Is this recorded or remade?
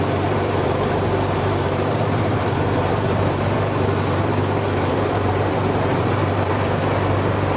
remade